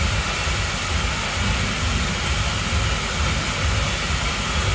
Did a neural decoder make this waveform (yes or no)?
no